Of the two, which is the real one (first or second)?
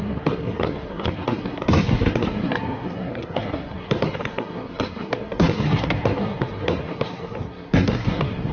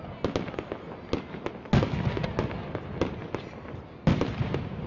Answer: second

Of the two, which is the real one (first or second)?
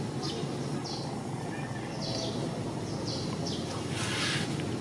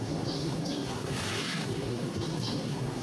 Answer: first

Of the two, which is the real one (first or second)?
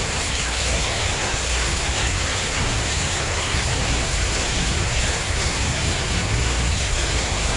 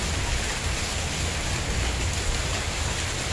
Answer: second